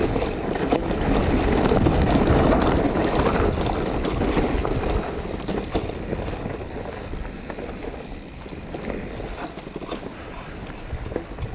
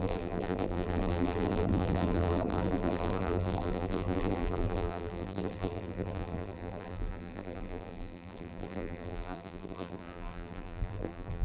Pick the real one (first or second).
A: first